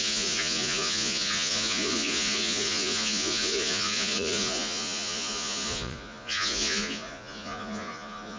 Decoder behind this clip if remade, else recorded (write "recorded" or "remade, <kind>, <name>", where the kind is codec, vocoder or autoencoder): remade, vocoder, Vocos